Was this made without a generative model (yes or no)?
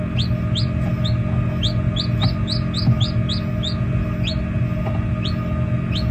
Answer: yes